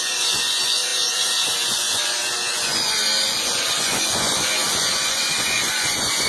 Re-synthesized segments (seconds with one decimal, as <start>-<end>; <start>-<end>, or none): 0.0-6.3

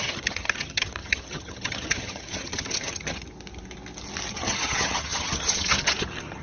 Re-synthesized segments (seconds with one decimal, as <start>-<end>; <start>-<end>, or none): 0.0-3.3; 4.3-6.4

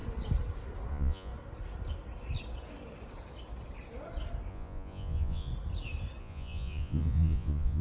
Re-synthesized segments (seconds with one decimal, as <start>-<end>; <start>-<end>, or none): 0.9-1.3; 4.5-5.5; 6.2-7.8